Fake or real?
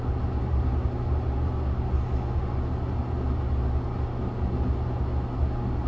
real